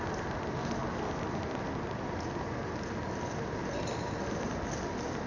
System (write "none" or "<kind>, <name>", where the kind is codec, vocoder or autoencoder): none